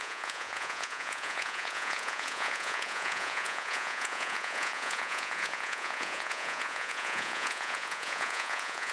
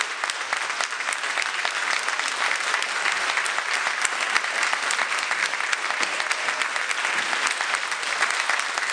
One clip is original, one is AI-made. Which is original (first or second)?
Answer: second